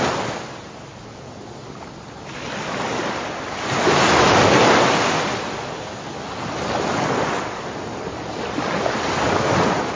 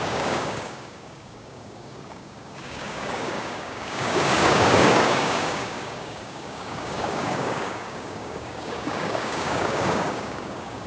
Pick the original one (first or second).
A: first